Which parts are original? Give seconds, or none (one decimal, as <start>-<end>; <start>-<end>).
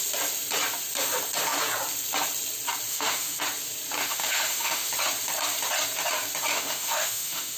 0.0-2.9; 3.4-4.0; 4.9-6.5